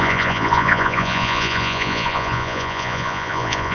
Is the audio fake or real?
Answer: fake